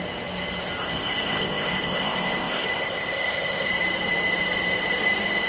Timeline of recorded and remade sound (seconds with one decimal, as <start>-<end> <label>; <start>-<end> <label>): 0.0-0.8 recorded; 0.8-3.7 remade; 3.7-5.5 recorded